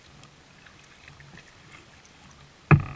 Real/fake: real